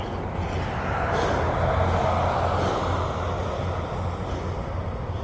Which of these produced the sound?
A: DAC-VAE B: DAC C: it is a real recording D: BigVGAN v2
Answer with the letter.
C